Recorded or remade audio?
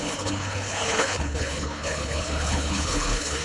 remade